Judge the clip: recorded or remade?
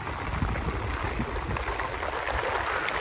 recorded